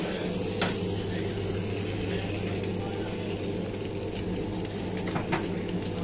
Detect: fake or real real